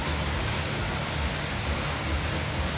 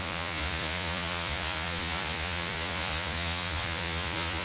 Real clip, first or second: first